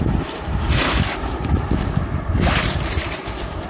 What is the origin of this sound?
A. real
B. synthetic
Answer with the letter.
B